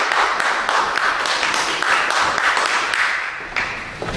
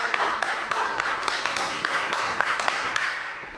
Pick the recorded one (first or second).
first